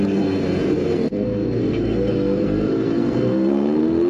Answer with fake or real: fake